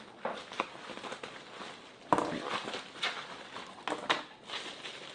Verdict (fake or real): real